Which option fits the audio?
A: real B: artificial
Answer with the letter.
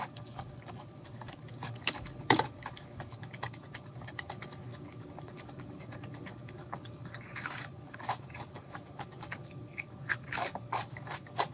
B